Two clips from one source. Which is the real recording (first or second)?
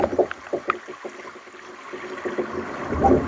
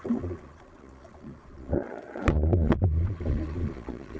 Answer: first